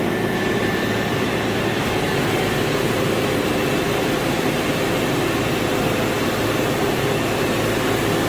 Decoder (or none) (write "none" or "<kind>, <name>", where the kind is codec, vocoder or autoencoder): vocoder, BigVGAN v2